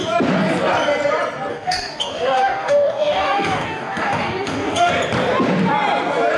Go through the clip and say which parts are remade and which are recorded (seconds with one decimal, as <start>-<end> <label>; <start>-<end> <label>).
0.0-1.5 recorded; 1.5-4.9 remade; 4.9-6.4 recorded